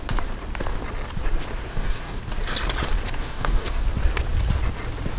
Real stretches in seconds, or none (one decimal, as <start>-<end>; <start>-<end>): 0.0-1.7; 2.2-3.2; 3.8-5.2